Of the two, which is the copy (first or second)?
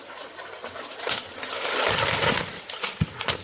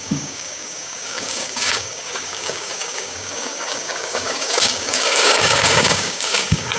second